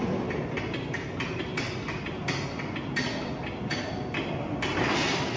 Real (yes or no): yes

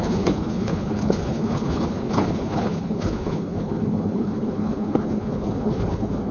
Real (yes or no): no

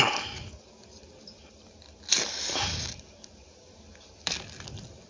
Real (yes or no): yes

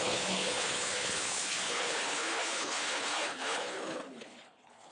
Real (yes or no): no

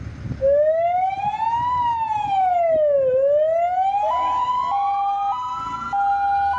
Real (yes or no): yes